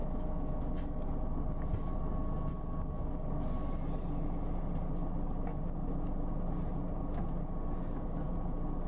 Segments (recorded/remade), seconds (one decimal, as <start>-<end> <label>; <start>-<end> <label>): 0.0-0.6 remade; 0.6-8.9 recorded